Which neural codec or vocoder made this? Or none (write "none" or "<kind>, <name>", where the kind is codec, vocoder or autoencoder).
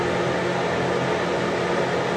none